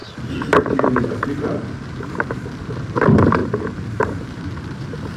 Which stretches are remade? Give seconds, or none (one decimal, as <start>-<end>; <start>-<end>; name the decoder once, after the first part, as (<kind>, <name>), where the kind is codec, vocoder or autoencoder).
1.1-5.2 (vocoder, BigVGAN v2)